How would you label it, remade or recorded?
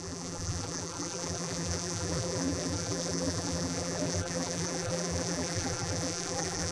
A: remade